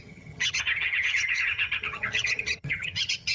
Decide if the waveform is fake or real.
fake